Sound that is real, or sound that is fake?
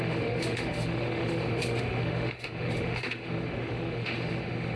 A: fake